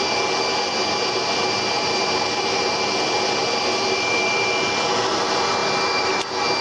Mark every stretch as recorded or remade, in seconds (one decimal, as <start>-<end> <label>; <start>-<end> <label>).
0.0-6.6 recorded